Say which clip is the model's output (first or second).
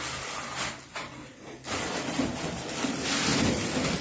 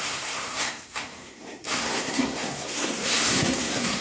second